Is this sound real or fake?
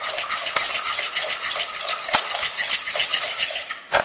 real